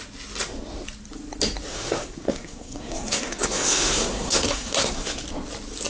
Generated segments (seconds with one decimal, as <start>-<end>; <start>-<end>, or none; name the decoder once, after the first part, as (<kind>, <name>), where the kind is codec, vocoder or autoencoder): 1.7-5.2 (codec, SNAC)